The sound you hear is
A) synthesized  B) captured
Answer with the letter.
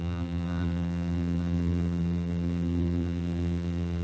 A